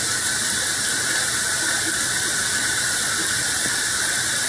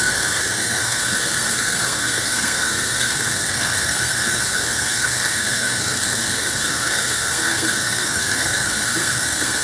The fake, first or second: second